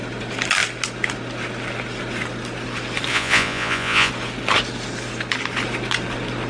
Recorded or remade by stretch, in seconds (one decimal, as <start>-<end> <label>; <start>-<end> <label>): 0.0-3.1 recorded; 3.1-4.1 remade; 4.1-6.5 recorded